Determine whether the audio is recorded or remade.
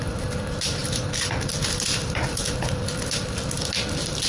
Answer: recorded